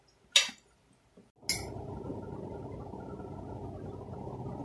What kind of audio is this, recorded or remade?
recorded